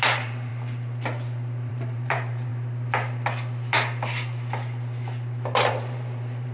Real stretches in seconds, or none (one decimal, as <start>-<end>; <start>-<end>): 0.5-1.7; 2.5-5.7